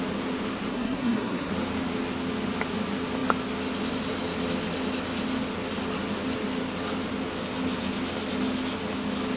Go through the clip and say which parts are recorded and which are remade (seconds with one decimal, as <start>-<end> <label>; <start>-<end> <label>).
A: 0.0-0.7 recorded; 0.7-1.5 remade; 1.5-9.4 recorded